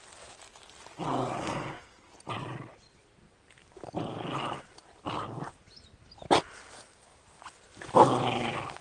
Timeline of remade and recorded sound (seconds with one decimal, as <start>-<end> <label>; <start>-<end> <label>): 0.0-1.4 recorded; 1.4-2.1 remade; 2.1-8.8 recorded

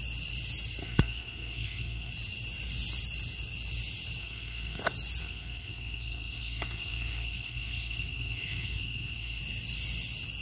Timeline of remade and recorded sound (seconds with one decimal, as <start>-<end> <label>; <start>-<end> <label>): 0.0-0.8 recorded; 0.8-2.1 remade; 2.1-4.2 recorded; 4.2-4.8 remade; 4.8-5.2 recorded; 5.2-9.4 remade; 9.4-10.4 recorded

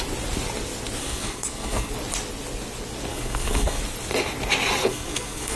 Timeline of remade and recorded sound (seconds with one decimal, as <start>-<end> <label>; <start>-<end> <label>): 0.0-1.0 recorded; 1.0-1.9 remade; 1.9-3.1 recorded; 3.1-3.8 remade; 3.8-4.8 recorded; 4.8-5.6 remade

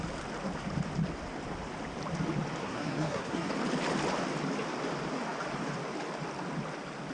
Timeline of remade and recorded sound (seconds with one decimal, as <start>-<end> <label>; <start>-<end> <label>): 0.0-2.6 recorded; 2.6-3.5 remade; 3.5-7.1 recorded

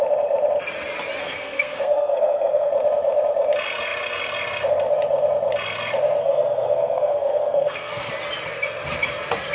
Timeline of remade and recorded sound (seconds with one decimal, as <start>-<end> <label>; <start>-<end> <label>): 0.0-1.2 recorded; 1.2-2.7 remade; 2.7-6.2 recorded; 6.2-8.1 remade; 8.1-9.5 recorded

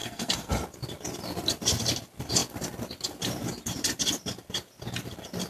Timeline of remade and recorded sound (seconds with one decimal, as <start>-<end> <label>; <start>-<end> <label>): 0.0-0.5 remade; 0.5-5.5 recorded